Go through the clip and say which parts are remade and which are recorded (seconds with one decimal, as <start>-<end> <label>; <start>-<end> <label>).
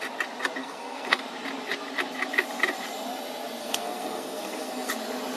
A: 0.0-0.6 recorded; 0.6-1.2 remade; 1.2-3.6 recorded; 3.6-4.9 remade; 4.9-5.4 recorded